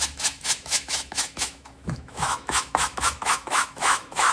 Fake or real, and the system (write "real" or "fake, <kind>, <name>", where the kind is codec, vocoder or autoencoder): fake, autoencoder, DAC-VAE